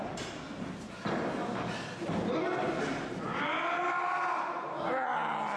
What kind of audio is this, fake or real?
real